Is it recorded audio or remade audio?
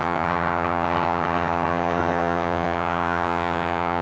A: remade